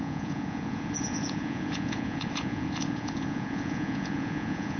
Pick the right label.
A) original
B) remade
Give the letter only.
B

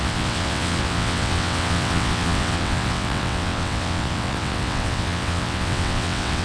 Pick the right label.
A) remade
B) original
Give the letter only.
A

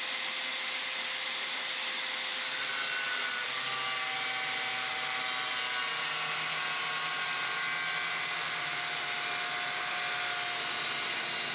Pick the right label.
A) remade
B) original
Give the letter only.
B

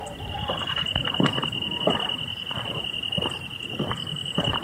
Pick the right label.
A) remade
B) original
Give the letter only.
A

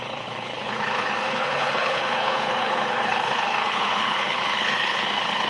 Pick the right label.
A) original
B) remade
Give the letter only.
B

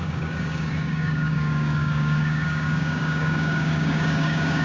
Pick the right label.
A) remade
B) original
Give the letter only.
A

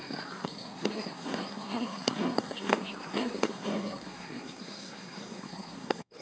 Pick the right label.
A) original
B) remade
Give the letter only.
B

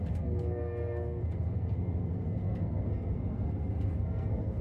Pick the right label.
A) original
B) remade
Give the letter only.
B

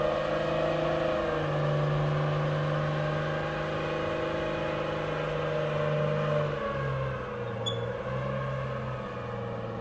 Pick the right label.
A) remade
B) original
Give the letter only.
B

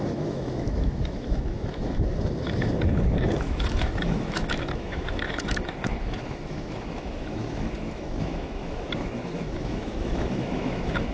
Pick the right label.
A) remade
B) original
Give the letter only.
A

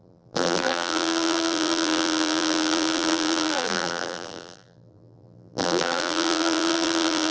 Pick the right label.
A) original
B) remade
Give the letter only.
B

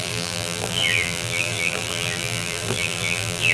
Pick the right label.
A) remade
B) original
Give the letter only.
A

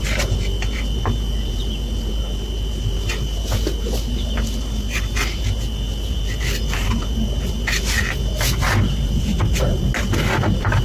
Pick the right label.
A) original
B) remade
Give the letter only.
A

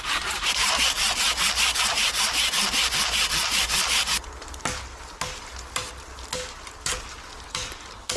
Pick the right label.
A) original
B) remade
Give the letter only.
A